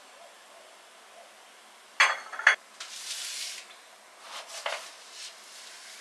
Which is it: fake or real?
real